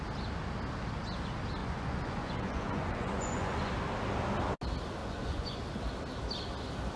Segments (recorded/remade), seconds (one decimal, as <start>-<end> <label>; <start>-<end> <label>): 0.0-1.6 recorded; 1.6-3.7 remade; 3.7-5.0 recorded; 5.0-5.6 remade; 5.6-7.0 recorded